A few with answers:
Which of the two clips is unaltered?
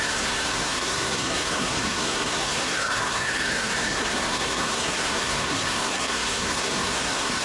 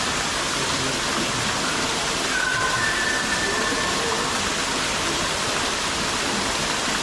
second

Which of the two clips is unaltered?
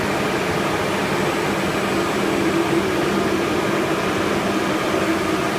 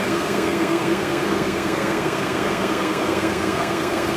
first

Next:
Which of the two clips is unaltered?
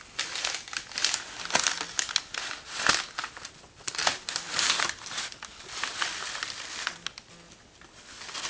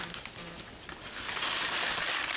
first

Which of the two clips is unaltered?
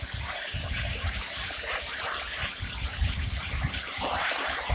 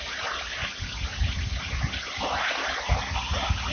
second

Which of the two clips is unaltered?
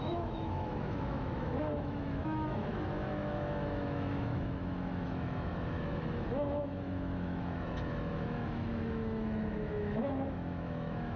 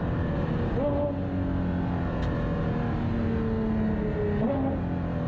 second